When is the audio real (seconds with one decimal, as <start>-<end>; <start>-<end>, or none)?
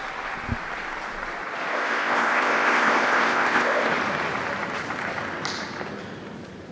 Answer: 0.0-1.7; 3.9-6.7